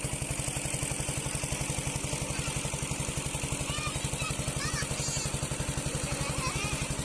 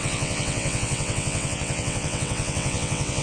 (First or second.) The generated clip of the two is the second